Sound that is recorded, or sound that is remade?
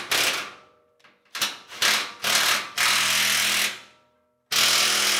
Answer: recorded